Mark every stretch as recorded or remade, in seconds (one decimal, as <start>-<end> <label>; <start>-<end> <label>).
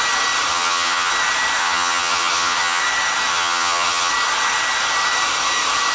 0.0-0.5 recorded; 0.5-1.1 remade; 1.1-1.6 recorded; 1.6-2.8 remade; 2.8-3.3 recorded; 3.3-4.1 remade; 4.1-5.9 recorded